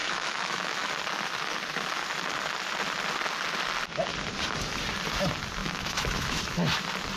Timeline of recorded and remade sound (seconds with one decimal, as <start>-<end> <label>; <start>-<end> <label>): 0.0-0.9 remade; 0.9-5.6 recorded; 5.6-6.4 remade; 6.4-7.2 recorded